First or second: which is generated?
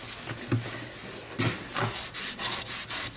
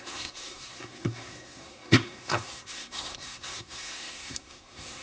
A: second